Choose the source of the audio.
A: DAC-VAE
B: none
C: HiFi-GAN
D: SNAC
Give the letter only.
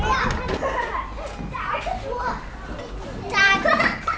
B